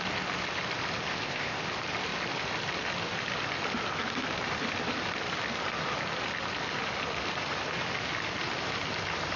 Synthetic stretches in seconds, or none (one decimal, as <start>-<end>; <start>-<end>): 1.1-1.6